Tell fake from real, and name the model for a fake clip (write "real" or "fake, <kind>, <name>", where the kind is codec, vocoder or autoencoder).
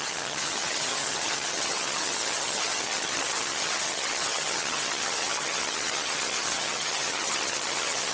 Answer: fake, vocoder, HiFi-GAN